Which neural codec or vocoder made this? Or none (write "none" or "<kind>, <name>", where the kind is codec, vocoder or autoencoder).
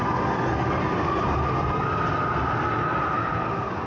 none